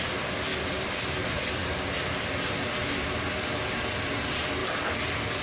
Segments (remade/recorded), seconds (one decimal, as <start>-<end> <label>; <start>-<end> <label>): 0.0-5.4 recorded